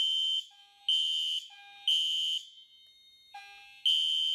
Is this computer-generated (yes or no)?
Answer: no